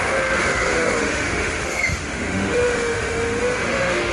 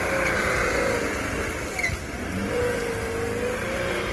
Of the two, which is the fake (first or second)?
first